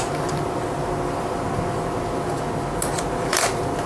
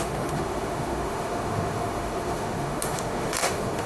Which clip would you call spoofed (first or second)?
second